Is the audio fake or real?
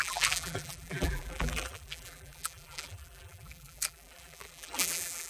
fake